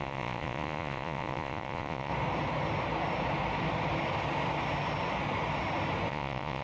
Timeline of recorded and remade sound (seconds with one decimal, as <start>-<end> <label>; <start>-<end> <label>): 0.0-2.1 remade; 2.1-6.1 recorded; 6.1-6.6 remade